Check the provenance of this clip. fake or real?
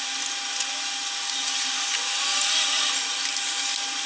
real